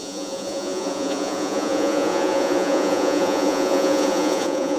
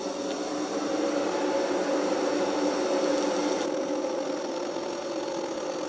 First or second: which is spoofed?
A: first